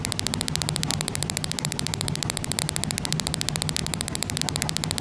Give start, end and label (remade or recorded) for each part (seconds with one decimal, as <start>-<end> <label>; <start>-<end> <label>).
0.0-0.9 recorded; 0.9-2.6 remade; 2.6-3.8 recorded; 3.8-4.4 remade; 4.4-5.0 recorded